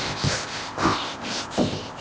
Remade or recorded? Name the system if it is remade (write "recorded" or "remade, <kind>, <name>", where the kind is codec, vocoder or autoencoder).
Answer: remade, codec, ZipCodec